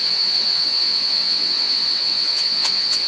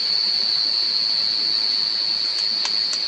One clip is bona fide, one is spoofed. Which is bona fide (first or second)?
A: second